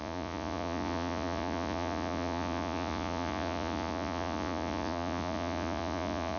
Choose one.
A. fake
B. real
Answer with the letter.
A